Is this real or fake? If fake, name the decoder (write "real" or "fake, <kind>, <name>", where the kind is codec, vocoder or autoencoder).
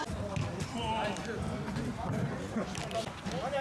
real